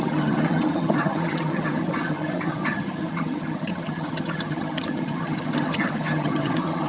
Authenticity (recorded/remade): remade